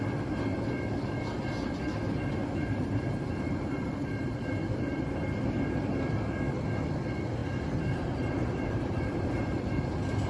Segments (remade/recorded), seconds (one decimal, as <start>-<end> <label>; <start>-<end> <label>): 0.0-2.4 recorded; 2.4-5.1 remade; 5.1-7.4 recorded; 7.4-9.8 remade; 9.8-10.3 recorded